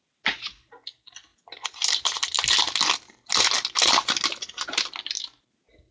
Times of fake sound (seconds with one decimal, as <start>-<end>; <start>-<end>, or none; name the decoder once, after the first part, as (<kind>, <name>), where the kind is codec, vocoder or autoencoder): none